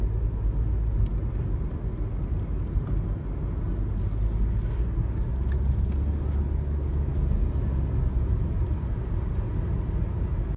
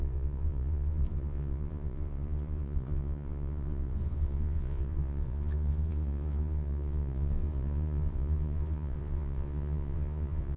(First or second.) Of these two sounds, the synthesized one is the second